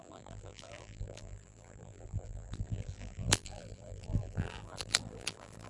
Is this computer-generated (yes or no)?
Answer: yes